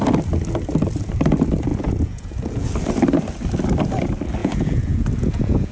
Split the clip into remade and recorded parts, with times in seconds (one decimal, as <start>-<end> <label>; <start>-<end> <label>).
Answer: 0.0-1.7 recorded; 1.7-2.7 remade; 2.7-4.4 recorded; 4.4-5.7 remade